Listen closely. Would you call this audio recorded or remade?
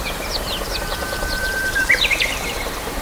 remade